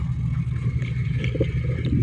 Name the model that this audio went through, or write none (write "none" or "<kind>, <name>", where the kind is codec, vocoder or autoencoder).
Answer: none